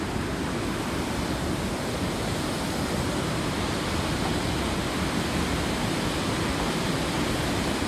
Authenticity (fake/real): real